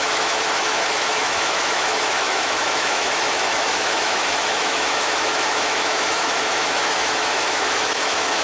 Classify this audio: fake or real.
fake